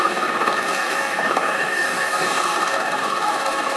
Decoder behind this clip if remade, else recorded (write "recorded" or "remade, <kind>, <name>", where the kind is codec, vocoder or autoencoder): remade, codec, DAC